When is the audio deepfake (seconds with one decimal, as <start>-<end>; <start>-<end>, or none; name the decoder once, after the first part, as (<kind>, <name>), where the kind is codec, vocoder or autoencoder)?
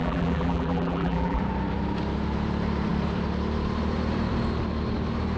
0.0-1.4 (vocoder, BigVGAN v2)